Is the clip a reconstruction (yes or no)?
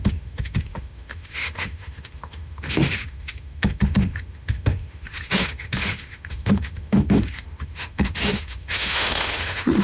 yes